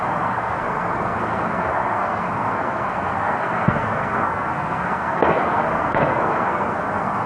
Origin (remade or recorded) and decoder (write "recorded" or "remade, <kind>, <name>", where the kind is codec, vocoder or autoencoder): remade, codec, SNAC